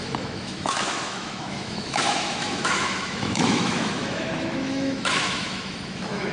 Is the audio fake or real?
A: fake